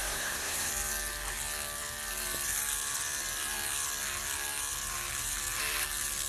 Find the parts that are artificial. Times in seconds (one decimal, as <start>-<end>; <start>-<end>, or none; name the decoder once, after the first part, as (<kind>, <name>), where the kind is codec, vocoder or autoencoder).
0.0-0.7 (codec, SNAC)